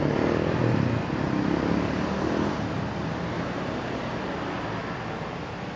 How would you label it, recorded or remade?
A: recorded